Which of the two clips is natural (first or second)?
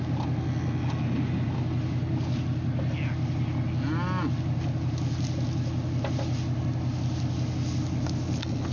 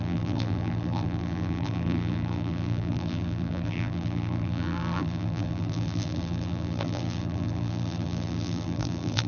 first